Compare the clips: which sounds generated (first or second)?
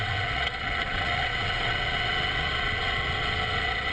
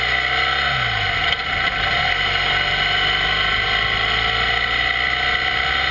first